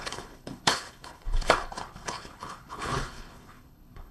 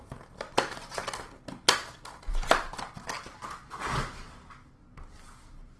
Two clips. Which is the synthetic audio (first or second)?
first